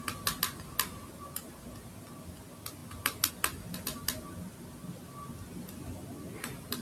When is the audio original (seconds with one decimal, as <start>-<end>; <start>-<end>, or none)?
0.0-6.8